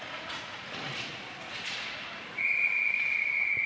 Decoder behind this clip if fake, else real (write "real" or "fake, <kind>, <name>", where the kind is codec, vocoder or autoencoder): fake, vocoder, Vocos